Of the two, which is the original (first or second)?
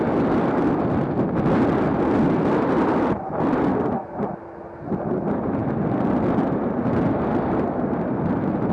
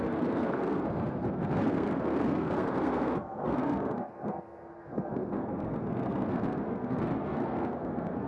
first